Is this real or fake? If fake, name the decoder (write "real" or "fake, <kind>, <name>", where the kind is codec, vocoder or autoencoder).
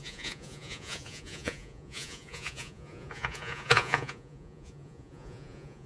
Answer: fake, vocoder, Vocos